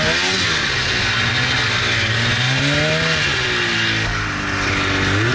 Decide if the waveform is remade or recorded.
recorded